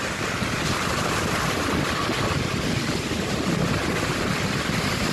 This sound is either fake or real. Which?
fake